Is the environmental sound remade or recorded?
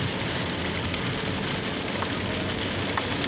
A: recorded